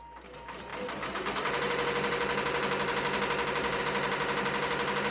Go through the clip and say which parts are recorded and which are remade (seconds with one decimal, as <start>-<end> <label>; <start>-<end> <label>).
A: 0.0-5.1 recorded